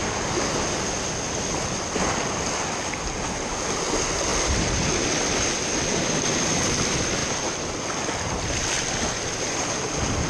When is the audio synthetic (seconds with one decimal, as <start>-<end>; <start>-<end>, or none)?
4.3-5.3